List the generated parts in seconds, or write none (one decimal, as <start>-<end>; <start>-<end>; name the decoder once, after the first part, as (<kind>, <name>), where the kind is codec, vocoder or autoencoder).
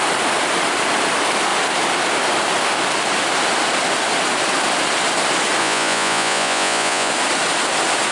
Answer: 5.6-7.1 (vocoder, Vocos)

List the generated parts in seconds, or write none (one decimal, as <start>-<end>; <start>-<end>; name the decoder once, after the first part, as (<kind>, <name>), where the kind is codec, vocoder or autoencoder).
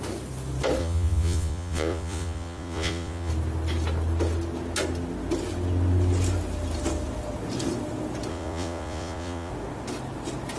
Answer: 0.8-3.3 (vocoder, Vocos); 8.3-9.5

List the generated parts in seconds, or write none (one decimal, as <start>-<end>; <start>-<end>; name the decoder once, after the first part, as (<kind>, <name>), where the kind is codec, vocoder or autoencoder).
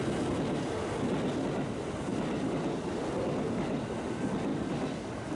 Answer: none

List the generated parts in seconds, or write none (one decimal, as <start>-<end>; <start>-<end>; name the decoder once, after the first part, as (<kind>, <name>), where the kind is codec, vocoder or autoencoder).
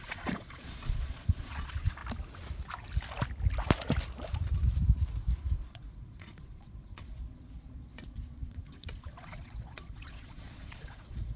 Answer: 0.0-2.0 (vocoder, Vocos); 5.6-11.4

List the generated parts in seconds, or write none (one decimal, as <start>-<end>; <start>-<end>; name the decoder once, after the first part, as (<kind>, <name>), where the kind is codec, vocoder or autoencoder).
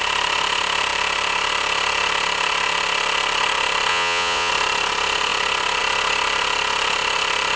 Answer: 3.9-4.5 (vocoder, Vocos)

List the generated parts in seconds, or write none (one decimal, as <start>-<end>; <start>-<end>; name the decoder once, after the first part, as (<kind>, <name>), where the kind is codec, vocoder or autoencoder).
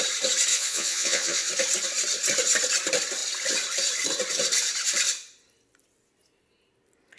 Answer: 0.5-1.5 (vocoder, Vocos)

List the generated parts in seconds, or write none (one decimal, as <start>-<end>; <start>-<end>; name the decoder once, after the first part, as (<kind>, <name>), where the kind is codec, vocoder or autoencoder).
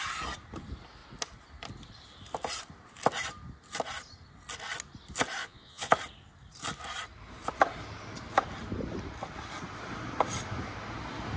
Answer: 5.4-5.9 (vocoder, Vocos)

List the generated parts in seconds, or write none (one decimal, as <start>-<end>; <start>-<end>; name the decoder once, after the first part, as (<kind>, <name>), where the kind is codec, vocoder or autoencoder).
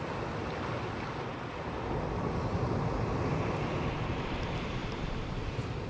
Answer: none